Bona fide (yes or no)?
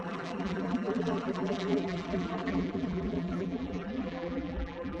no